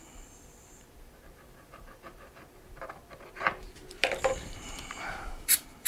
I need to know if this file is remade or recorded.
remade